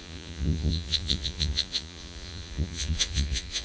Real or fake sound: fake